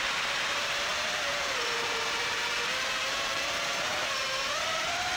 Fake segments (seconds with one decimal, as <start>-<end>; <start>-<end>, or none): 0.0-5.2

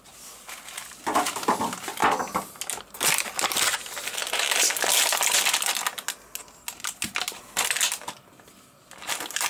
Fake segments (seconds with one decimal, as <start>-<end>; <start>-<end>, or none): none

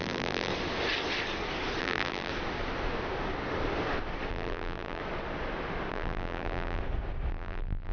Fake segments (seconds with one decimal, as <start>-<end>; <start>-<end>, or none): 0.0-0.5; 1.8-2.3; 4.3-5.0; 5.9-6.8; 7.3-7.9

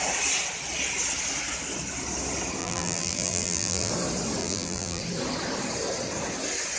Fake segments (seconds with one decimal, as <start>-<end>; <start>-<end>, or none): 2.6-3.9; 4.4-5.0

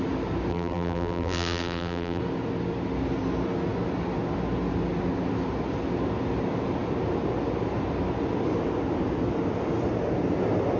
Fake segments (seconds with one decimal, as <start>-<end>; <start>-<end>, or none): 0.5-2.2

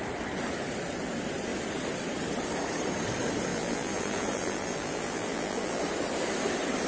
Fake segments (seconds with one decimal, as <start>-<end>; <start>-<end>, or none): 3.5-5.8

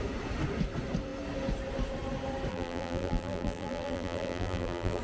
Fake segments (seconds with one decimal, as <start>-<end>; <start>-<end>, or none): 2.5-5.0